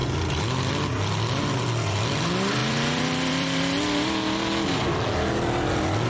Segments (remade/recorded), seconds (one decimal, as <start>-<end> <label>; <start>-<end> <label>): 0.0-2.6 recorded; 2.6-3.6 remade; 3.6-6.1 recorded